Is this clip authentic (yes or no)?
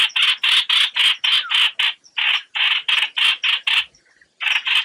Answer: yes